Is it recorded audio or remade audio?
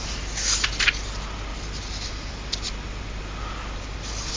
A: recorded